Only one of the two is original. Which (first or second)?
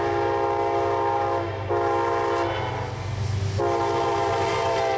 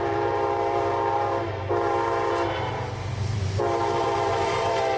first